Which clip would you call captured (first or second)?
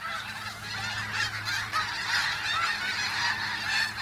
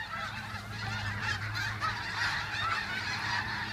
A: first